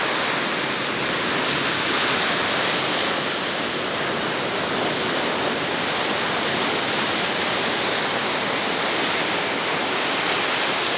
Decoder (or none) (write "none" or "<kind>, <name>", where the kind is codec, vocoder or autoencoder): none